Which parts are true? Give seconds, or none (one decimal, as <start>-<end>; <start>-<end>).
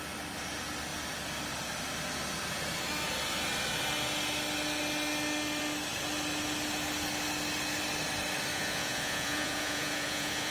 0.0-8.5